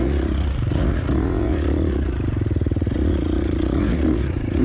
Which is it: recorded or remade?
remade